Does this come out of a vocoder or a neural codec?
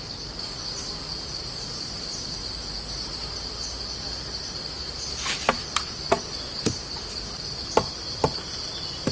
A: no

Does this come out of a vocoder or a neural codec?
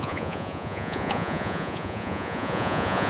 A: yes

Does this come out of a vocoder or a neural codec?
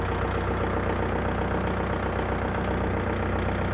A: no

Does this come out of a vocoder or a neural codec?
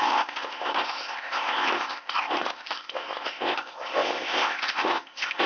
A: yes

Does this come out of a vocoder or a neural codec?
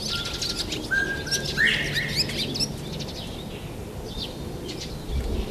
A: no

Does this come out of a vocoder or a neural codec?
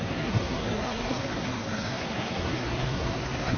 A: yes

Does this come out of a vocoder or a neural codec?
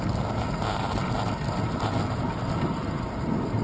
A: no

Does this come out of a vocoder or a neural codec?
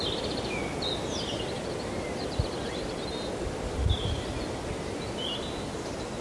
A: no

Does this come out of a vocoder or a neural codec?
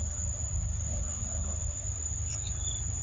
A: no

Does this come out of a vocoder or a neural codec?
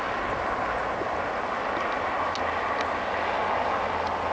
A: no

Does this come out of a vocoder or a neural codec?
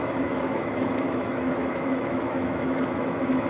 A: yes